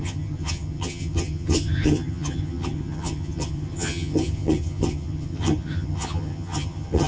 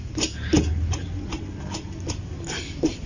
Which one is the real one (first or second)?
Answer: second